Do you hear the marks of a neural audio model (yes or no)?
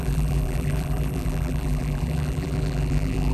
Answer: yes